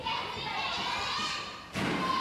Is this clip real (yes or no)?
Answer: yes